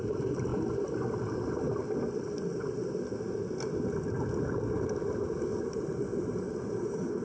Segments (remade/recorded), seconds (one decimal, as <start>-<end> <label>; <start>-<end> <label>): 0.0-7.2 recorded